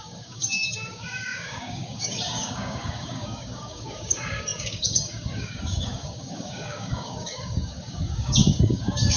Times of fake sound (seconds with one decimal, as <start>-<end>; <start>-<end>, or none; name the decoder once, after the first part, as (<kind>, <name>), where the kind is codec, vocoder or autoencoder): 0.0-9.2 (codec, DAC)